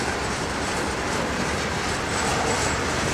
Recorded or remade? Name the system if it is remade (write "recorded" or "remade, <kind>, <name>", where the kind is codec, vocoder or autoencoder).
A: recorded